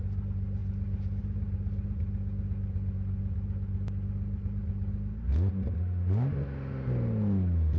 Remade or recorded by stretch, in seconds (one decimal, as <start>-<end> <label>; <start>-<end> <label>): 0.0-7.8 recorded